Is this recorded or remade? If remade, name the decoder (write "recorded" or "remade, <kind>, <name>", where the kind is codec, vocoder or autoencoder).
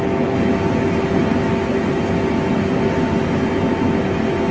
recorded